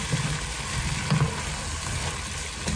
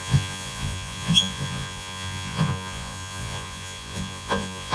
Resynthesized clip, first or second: second